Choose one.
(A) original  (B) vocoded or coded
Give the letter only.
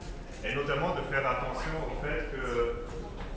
A